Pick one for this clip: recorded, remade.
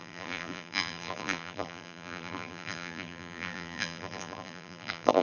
remade